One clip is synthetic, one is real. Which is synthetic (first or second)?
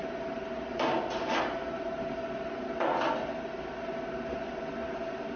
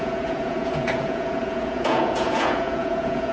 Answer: second